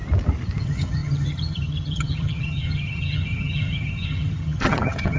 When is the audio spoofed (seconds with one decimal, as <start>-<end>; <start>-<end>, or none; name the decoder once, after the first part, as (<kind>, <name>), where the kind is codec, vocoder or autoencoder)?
0.6-5.2 (vocoder, HiFi-GAN)